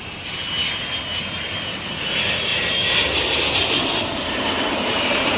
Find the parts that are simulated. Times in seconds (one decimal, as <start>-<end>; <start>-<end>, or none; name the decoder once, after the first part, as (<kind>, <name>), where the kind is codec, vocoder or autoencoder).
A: 2.5-5.4 (vocoder, BigVGAN v2)